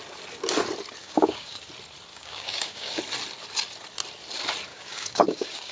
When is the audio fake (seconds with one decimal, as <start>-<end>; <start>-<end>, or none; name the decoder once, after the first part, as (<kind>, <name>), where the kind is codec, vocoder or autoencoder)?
1.0-1.7 (codec, DAC); 2.1-3.0; 4.7-5.7